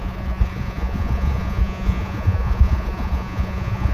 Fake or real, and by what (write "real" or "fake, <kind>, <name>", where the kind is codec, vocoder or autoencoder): fake, vocoder, Vocos